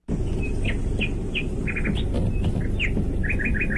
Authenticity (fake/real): real